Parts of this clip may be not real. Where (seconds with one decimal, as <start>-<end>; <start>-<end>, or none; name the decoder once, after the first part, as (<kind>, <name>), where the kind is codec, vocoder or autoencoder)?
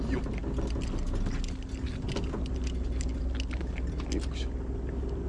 none